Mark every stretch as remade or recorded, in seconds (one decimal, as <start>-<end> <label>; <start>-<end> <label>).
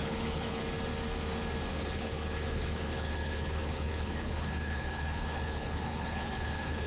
0.0-0.6 remade; 0.6-1.7 recorded; 1.7-6.9 remade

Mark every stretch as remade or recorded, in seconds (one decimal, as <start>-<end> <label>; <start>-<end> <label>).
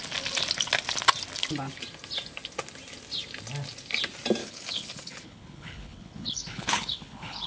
0.0-4.4 recorded; 4.4-7.5 remade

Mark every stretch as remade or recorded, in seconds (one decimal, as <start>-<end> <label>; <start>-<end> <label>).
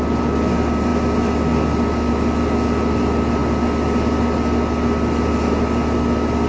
0.0-6.5 recorded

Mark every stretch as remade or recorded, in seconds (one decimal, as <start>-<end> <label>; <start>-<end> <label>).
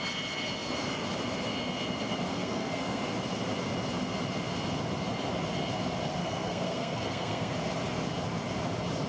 0.0-2.3 recorded; 2.3-3.0 remade; 3.0-6.2 recorded; 6.2-7.5 remade; 7.5-9.1 recorded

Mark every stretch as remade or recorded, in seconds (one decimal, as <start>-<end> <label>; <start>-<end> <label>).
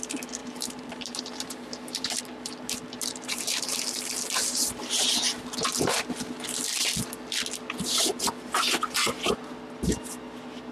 0.0-0.4 recorded; 0.4-2.2 remade; 2.2-3.1 recorded; 3.1-3.7 remade; 3.7-10.7 recorded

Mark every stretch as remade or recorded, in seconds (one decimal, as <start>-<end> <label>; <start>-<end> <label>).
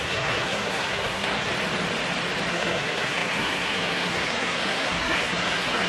0.0-1.5 remade; 1.5-2.5 recorded; 2.5-5.9 remade